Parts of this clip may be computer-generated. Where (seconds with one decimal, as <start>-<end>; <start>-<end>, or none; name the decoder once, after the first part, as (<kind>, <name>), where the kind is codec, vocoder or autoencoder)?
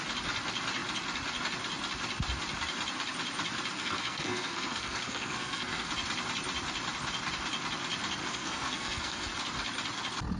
3.7-5.9 (codec, SNAC); 8.2-9.3